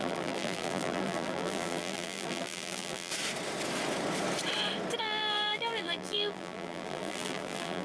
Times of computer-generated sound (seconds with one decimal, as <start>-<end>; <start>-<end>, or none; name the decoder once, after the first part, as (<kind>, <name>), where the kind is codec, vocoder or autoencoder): 0.0-3.1 (vocoder, BigVGAN v2); 5.0-7.8